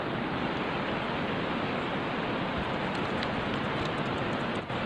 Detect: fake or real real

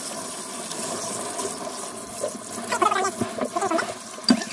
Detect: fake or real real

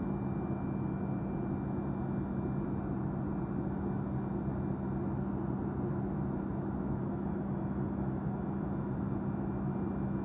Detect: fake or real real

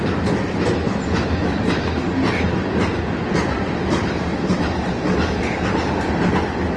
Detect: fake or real real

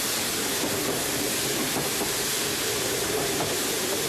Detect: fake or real real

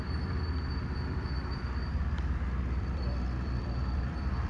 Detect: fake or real fake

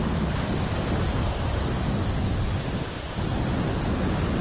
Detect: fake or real real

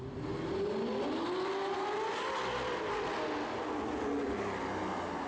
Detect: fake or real real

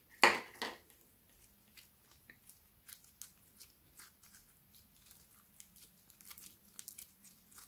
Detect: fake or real real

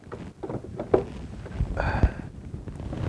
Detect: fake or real real